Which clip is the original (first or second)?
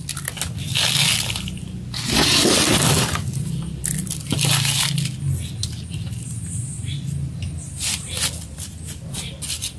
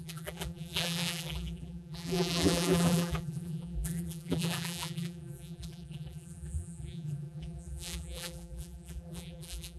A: first